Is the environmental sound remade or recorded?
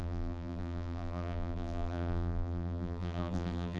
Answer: remade